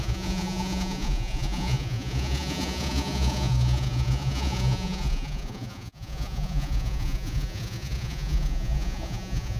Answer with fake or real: fake